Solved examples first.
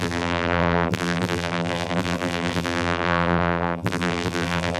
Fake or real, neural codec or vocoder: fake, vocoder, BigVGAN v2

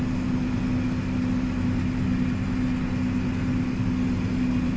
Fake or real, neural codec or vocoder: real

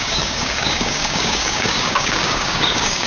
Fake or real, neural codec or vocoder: fake, codec, DAC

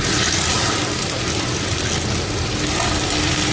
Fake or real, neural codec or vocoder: real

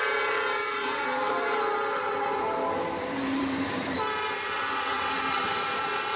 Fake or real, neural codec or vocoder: fake, vocoder, BigVGAN v2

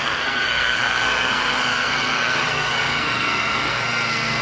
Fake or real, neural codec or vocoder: fake, codec, SNAC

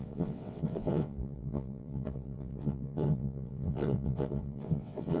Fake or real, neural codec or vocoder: fake, vocoder, WaveNeXt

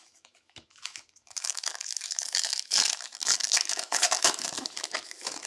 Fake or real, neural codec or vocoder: fake, autoencoder, DAC-VAE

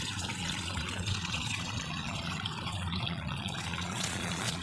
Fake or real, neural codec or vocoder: fake, vocoder, Vocos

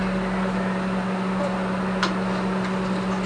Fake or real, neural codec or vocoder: real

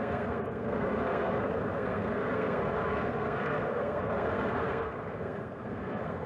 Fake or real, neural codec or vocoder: fake, codec, SNAC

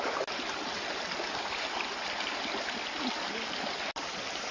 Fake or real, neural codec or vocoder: real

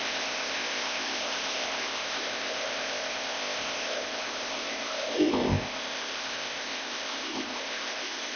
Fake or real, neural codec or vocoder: fake, codec, ZipCodec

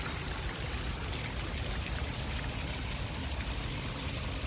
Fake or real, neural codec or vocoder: real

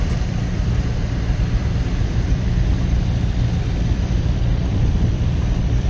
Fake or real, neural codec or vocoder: fake, vocoder, BigVGAN v2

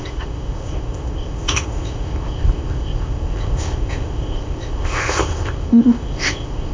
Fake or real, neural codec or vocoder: fake, codec, ZipCodec